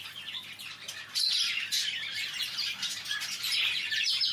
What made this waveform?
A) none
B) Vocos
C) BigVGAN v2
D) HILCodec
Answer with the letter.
C